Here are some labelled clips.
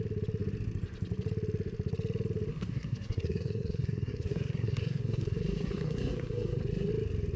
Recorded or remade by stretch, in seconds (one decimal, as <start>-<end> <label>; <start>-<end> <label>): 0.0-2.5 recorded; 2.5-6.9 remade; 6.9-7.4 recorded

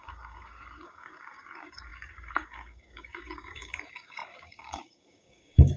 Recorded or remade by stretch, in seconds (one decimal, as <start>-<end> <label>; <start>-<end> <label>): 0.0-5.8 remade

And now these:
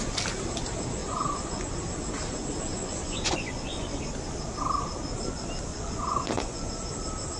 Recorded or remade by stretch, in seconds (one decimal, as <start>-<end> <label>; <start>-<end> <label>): 0.0-1.0 recorded; 1.0-1.8 remade; 1.8-2.7 recorded; 2.7-4.0 remade; 4.0-5.7 recorded; 5.7-6.7 remade; 6.7-7.4 recorded

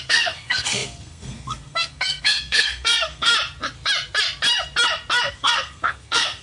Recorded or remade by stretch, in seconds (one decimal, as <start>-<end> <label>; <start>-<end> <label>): 0.0-3.3 remade; 3.3-5.3 recorded; 5.3-6.4 remade

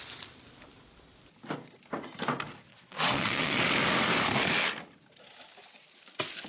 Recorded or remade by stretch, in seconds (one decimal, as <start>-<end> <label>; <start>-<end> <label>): 0.0-2.7 recorded; 2.7-3.6 remade; 3.6-6.5 recorded

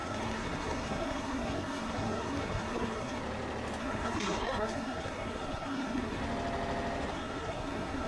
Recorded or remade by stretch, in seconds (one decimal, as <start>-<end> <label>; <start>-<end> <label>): 0.0-3.2 remade; 3.2-3.8 recorded; 3.8-6.2 remade; 6.2-7.1 recorded; 7.1-8.1 remade